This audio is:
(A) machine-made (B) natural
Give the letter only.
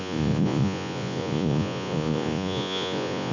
A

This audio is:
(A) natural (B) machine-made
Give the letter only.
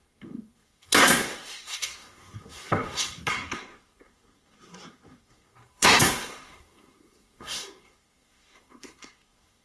B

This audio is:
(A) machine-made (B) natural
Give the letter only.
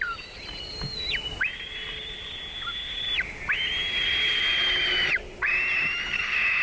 B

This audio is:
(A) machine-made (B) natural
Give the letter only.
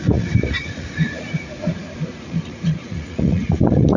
A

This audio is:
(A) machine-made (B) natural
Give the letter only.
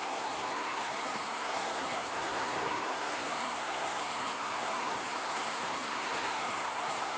A